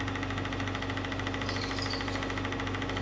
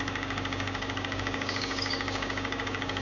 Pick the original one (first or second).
first